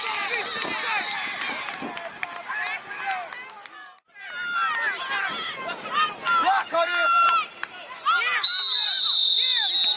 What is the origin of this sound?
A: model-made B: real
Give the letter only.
B